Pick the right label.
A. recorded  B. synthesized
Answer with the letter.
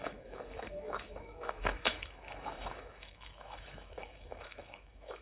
B